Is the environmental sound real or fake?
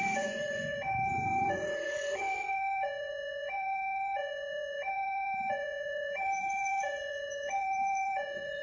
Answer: fake